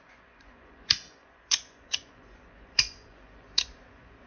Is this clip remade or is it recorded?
remade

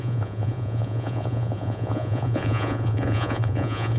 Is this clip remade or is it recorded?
remade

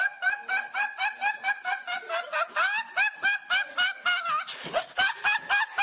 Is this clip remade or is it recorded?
recorded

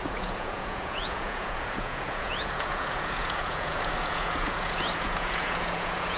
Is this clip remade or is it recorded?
remade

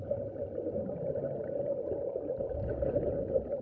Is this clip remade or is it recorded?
recorded